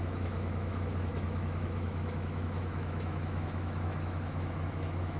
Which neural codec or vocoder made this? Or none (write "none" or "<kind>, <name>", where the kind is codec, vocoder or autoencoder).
autoencoder, DAC-VAE